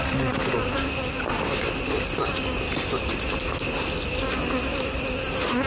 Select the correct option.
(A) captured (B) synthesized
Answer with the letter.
A